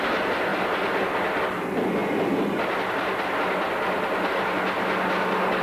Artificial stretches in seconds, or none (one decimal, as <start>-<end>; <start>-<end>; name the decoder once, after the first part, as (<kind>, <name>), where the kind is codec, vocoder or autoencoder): none

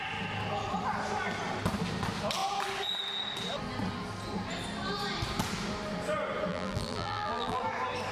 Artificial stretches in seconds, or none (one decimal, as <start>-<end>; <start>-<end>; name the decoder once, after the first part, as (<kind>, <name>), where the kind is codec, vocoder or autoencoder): 6.5-7.6 (vocoder, BigVGAN v2)

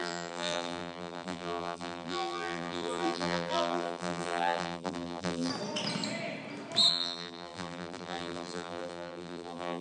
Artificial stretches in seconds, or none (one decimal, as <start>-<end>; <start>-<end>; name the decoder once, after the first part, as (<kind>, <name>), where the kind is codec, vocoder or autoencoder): 0.0-5.5 (vocoder, BigVGAN v2); 6.9-9.8

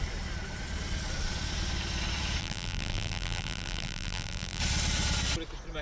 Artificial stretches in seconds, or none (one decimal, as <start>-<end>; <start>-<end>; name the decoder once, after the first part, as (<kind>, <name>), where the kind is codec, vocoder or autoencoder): 2.4-4.6 (vocoder, BigVGAN v2)

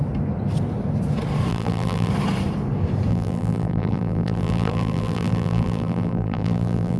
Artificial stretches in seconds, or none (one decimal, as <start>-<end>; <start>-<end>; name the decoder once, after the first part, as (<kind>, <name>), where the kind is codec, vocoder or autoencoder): 1.5-2.1 (vocoder, BigVGAN v2); 3.1-7.0

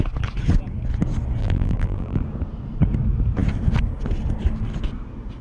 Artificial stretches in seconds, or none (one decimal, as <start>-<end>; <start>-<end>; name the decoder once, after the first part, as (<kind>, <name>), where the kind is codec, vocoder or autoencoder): 1.4-2.2 (vocoder, BigVGAN v2)

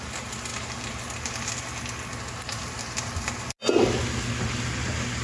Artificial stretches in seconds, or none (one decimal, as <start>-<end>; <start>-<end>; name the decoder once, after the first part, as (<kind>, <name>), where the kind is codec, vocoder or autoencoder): none